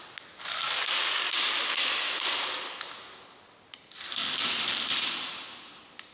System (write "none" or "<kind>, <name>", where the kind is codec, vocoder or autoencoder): none